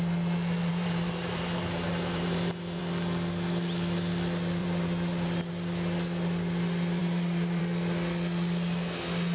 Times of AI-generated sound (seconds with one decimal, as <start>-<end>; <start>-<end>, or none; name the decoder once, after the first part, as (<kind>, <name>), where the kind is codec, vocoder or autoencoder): 0.7-2.8 (vocoder, BigVGAN v2); 4.6-5.5; 7.0-7.6